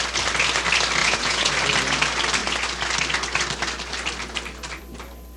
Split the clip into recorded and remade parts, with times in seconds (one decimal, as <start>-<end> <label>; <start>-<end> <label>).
0.0-1.0 recorded; 1.0-1.5 remade; 1.5-5.4 recorded